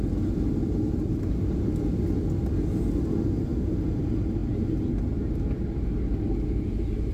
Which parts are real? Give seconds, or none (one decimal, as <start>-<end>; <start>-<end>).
0.0-7.1